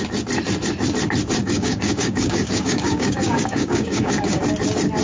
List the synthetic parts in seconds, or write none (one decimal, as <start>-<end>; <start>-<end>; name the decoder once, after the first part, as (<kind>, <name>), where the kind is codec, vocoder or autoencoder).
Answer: 1.4-4.4 (codec, DAC)